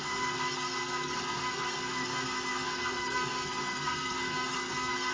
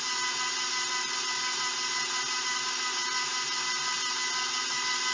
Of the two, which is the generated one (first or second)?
first